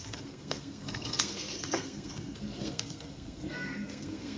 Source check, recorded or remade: remade